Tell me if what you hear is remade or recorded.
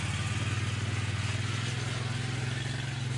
recorded